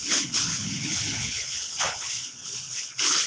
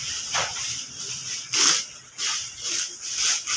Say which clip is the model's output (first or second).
first